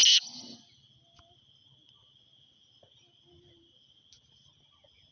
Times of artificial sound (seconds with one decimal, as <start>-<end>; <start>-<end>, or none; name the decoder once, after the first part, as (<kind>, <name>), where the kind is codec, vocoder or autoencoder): none